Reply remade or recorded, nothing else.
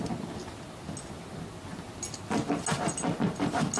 recorded